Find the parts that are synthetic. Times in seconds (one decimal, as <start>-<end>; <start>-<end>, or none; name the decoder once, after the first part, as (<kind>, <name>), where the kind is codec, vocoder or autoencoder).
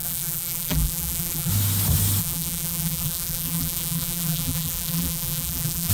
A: 0.0-1.5 (vocoder, BigVGAN v2); 2.2-5.9